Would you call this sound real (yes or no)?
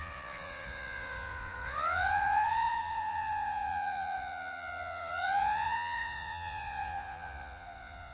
no